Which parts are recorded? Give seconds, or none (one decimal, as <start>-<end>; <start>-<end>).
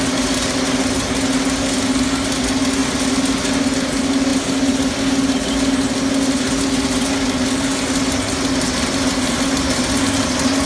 0.0-10.7